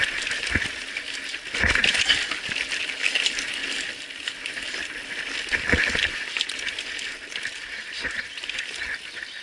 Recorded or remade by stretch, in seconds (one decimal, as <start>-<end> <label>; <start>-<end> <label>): 0.0-3.6 recorded; 3.6-8.4 remade; 8.4-9.4 recorded